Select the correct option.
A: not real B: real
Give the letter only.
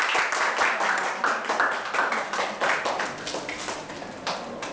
B